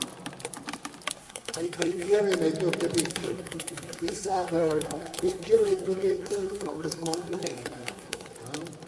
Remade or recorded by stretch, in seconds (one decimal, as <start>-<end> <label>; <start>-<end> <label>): 0.0-1.2 recorded; 1.2-2.2 remade; 2.2-3.1 recorded; 3.1-8.3 remade; 8.3-8.9 recorded